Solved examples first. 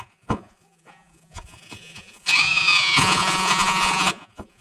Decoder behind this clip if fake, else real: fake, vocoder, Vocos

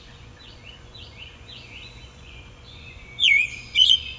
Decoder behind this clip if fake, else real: fake, vocoder, Vocos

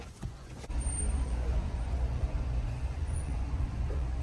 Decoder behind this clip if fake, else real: fake, vocoder, Vocos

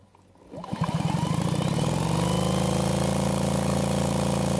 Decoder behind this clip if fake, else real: real